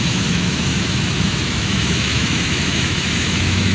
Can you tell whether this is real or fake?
fake